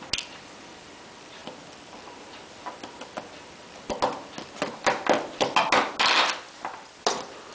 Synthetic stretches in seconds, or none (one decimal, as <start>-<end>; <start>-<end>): none